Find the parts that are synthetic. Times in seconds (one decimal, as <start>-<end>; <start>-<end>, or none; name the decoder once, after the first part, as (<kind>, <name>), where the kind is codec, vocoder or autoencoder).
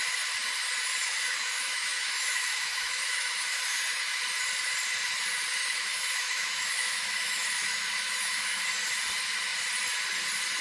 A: 1.0-4.2 (autoencoder, DAC-VAE); 5.6-8.6